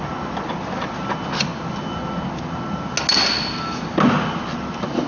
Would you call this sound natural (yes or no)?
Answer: yes